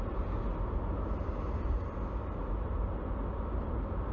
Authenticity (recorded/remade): recorded